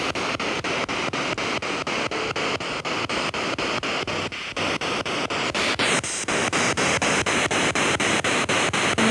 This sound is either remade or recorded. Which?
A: recorded